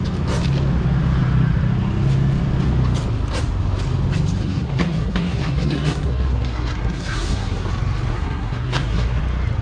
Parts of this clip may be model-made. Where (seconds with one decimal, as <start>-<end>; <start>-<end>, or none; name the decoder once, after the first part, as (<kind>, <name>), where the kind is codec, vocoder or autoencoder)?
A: 4.4-7.7 (codec, SNAC); 8.1-9.2